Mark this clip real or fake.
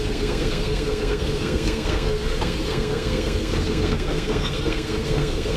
fake